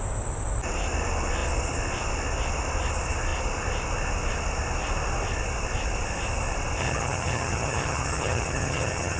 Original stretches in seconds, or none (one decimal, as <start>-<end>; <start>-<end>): 0.0-6.8